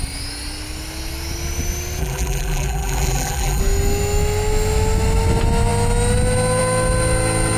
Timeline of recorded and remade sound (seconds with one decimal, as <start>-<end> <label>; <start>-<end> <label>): 0.0-2.0 recorded; 2.0-3.6 remade; 3.6-7.6 recorded